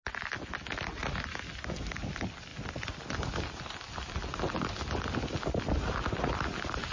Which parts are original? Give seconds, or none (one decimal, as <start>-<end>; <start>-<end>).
0.0-1.0; 1.5-6.9